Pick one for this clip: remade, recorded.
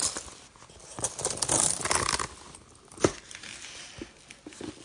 recorded